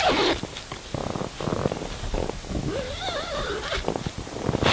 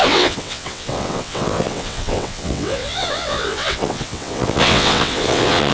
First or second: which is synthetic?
second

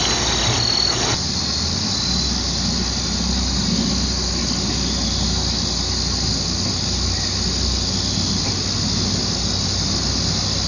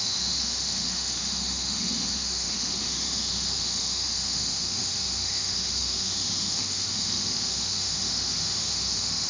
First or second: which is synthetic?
second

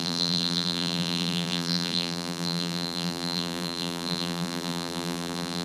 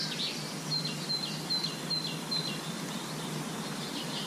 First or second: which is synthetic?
first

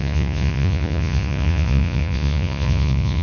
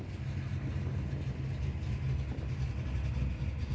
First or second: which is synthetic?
first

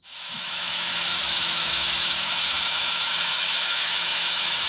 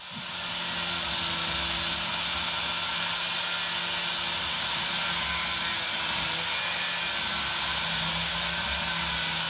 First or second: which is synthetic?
first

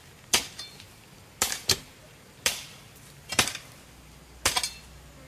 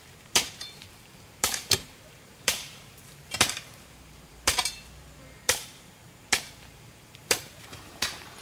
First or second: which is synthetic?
second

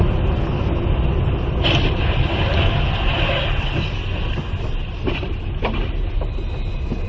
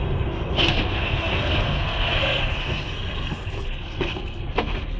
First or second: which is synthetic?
second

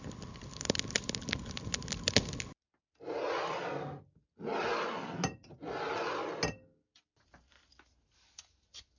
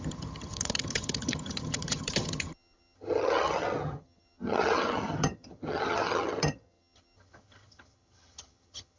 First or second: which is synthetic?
second